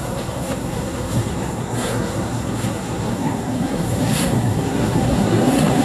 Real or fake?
fake